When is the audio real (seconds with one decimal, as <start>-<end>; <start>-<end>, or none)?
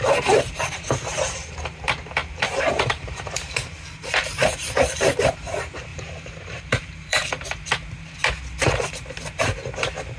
7.2-10.2